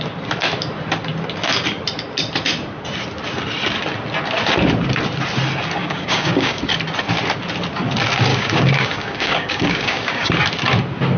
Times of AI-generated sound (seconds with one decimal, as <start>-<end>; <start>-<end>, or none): 5.8-6.6; 8.3-10.3